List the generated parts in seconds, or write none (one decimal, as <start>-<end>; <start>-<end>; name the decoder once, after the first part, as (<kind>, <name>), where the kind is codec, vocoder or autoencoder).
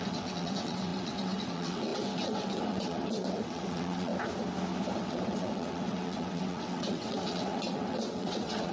0.0-4.1 (vocoder, WaveNeXt); 5.0-8.7